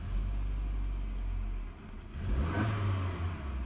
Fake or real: real